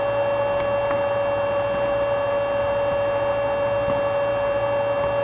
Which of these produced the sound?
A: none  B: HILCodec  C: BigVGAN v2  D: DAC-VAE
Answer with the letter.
A